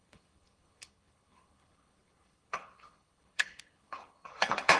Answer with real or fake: fake